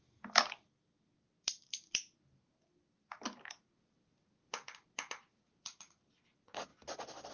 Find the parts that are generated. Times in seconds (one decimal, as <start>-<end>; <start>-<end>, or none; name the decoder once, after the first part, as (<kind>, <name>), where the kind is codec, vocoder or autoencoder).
none